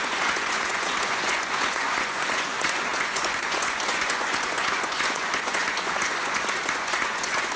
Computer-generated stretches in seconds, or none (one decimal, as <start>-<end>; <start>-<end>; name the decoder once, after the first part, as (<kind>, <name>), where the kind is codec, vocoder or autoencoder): 0.0-7.6 (vocoder, Vocos)